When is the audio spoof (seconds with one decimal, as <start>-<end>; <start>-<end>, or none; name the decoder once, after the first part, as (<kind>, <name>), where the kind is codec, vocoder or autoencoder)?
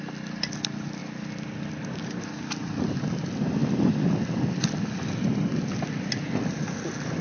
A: none